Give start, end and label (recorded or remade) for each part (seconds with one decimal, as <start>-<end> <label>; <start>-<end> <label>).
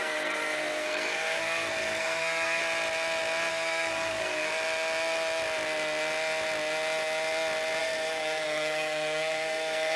0.0-2.6 remade; 2.6-3.5 recorded; 3.5-4.5 remade; 4.5-7.8 recorded; 7.8-10.0 remade